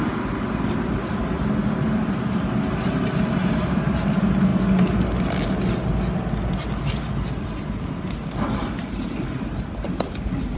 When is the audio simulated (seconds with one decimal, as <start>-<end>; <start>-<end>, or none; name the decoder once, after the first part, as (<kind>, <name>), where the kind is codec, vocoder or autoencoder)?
none